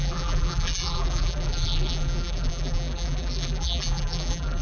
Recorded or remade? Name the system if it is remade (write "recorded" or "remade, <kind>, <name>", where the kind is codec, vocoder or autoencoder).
remade, vocoder, BigVGAN v2